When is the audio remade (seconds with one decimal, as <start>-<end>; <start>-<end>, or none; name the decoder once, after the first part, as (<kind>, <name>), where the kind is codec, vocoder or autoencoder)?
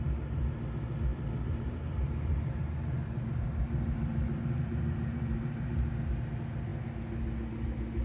1.1-5.9 (vocoder, BigVGAN v2)